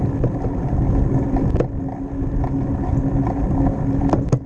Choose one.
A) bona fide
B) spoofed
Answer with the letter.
A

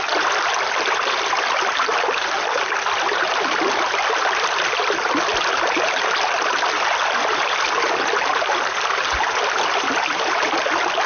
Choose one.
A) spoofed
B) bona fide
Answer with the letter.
B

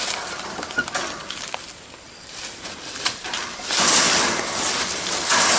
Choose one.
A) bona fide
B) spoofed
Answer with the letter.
A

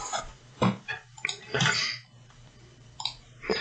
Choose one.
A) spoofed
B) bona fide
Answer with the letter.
A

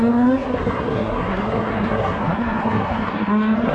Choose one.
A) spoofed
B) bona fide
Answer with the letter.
A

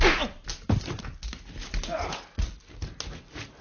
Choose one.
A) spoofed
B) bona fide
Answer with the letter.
B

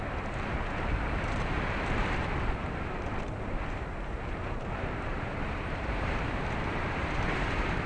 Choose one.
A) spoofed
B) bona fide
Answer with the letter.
A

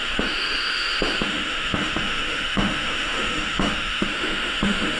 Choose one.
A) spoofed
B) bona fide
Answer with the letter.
A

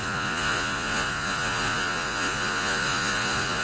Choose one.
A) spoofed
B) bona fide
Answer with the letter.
A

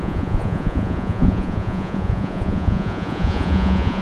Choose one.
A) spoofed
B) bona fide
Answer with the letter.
A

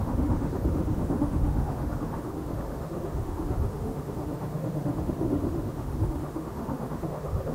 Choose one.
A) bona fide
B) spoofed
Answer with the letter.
B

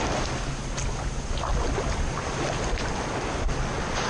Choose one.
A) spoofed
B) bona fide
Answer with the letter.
B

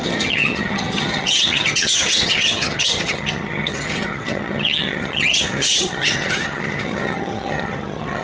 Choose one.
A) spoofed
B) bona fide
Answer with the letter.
A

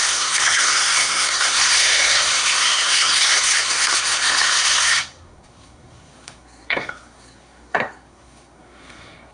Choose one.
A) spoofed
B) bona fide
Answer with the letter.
A